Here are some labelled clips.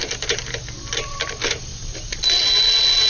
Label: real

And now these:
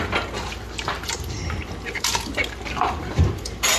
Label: real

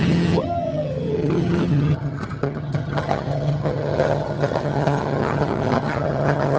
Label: fake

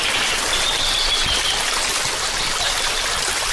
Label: real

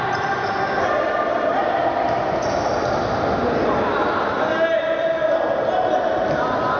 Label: real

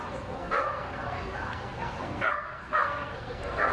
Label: fake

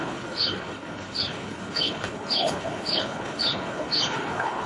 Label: fake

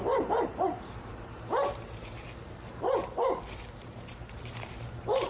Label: fake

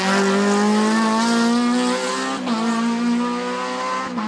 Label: real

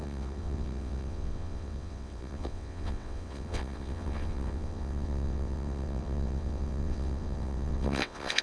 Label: fake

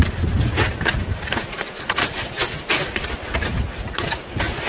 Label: real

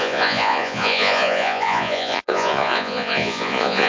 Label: fake